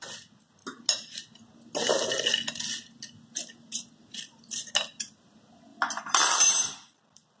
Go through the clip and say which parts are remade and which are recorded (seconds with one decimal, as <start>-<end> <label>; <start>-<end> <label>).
0.0-7.4 recorded